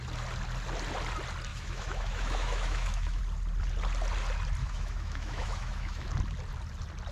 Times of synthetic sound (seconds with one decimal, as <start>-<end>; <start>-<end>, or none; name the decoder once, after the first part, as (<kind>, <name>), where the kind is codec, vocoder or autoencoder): 1.5-3.2 (autoencoder, DAC-VAE); 4.6-6.1